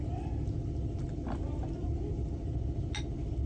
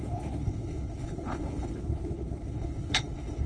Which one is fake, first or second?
second